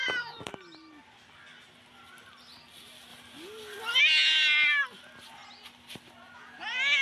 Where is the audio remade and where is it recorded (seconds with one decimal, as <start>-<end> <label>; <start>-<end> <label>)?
0.0-7.0 recorded

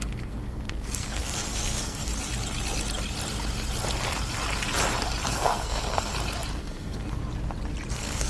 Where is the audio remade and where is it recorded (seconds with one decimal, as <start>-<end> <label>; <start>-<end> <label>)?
0.0-2.1 remade; 2.1-5.3 recorded; 5.3-6.1 remade; 6.1-6.6 recorded; 6.6-7.2 remade; 7.2-7.9 recorded; 7.9-8.3 remade

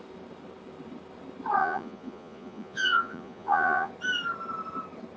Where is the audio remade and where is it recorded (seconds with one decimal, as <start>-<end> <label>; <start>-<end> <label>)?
0.0-1.6 recorded; 1.6-3.9 remade; 3.9-5.2 recorded

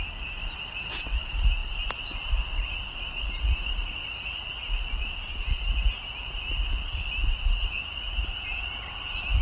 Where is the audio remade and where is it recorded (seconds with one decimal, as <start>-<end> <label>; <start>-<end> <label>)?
0.0-9.4 recorded

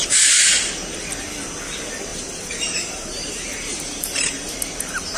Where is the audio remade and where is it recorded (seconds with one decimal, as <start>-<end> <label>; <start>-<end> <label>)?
0.0-2.1 recorded; 2.1-4.5 remade; 4.5-5.2 recorded

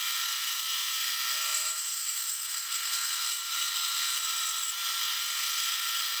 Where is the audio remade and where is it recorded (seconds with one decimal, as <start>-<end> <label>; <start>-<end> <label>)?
0.0-4.2 remade; 4.2-5.0 recorded; 5.0-6.2 remade